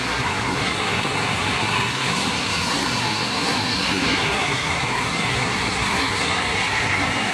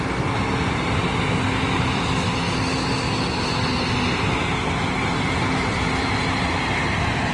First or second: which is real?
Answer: second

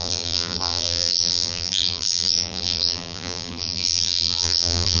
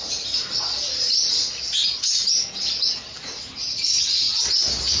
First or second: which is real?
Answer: second